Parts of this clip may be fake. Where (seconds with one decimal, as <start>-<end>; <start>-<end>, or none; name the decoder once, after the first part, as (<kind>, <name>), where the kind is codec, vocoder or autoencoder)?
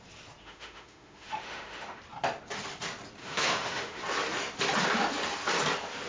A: 0.4-2.0 (autoencoder, DAC-VAE); 3.2-4.0